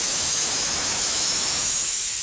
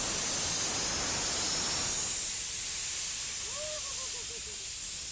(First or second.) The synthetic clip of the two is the first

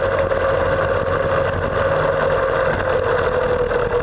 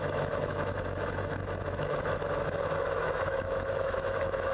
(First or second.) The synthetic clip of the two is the second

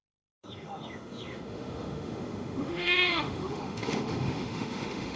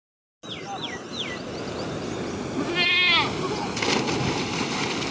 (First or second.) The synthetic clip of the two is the first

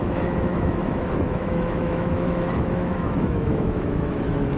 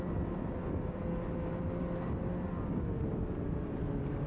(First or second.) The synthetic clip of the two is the first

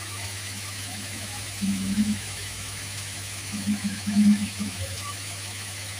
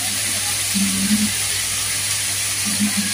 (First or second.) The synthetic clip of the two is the first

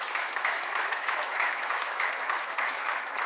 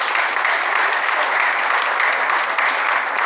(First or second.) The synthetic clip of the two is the first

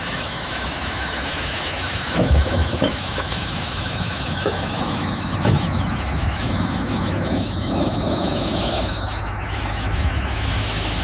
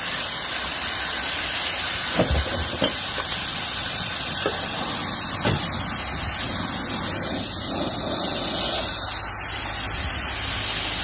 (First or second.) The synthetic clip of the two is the first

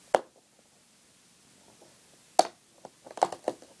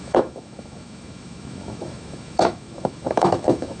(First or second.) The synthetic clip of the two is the second